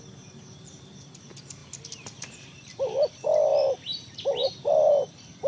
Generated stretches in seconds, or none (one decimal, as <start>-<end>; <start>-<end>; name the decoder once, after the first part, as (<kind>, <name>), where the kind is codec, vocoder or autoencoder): 1.6-2.4 (vocoder, BigVGAN v2)